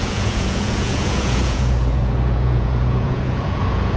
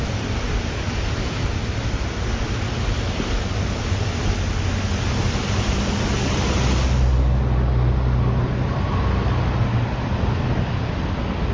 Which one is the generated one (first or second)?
first